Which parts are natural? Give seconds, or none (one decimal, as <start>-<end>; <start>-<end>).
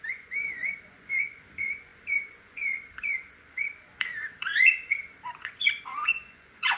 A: none